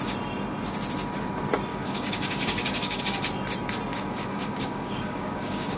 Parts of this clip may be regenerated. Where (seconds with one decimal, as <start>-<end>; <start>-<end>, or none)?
1.7-3.0; 3.9-5.8